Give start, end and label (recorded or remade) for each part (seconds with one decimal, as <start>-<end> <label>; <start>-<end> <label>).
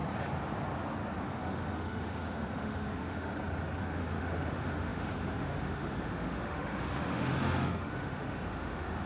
0.0-1.2 recorded; 1.2-3.3 remade; 3.3-3.8 recorded; 3.8-9.1 remade